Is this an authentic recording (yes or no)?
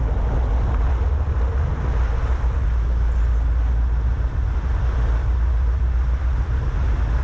yes